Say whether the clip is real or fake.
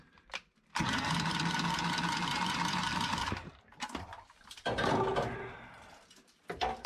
real